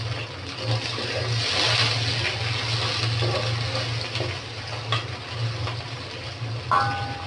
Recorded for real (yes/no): yes